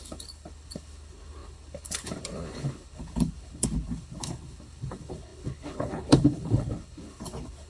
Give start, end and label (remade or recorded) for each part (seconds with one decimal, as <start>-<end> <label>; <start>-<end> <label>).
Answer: 0.0-7.7 remade